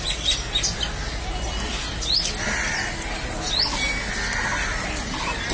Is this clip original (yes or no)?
yes